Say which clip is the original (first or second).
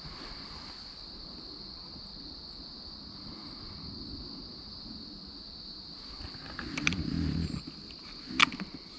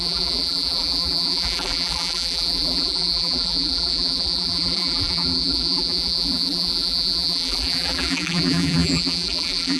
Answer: first